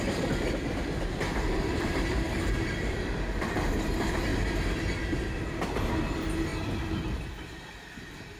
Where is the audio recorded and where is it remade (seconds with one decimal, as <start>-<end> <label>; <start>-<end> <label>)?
0.0-1.3 recorded; 1.3-3.8 remade; 3.8-8.4 recorded